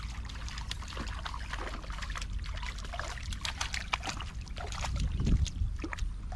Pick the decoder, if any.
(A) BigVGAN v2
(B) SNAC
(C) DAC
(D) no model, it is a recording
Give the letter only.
D